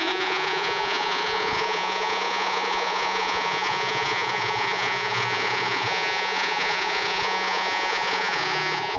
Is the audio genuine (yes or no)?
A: no